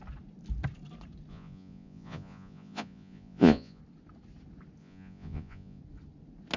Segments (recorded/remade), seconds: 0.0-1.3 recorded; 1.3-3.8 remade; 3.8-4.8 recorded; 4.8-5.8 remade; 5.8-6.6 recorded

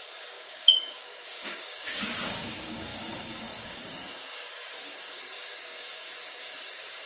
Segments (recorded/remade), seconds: 0.0-7.1 remade

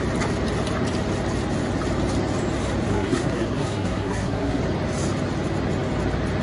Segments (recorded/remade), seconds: 0.0-2.9 recorded; 2.9-4.6 remade; 4.6-6.4 recorded

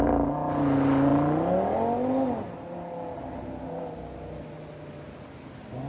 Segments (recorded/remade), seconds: 0.0-5.9 recorded

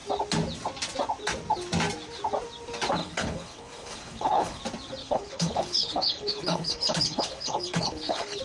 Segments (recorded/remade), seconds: 0.0-3.0 recorded; 3.0-4.6 remade; 4.6-5.0 recorded; 5.0-8.4 remade